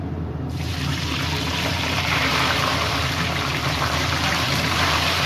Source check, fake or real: fake